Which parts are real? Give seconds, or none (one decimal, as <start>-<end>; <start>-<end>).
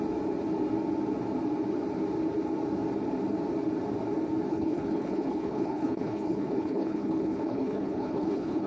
0.0-4.5